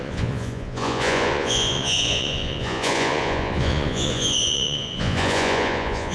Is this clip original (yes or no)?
no